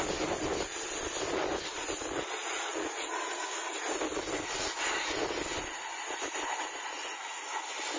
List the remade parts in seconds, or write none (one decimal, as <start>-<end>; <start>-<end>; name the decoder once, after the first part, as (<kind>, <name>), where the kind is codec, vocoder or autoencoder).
none